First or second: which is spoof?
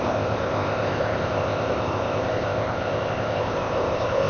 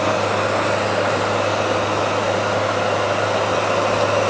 first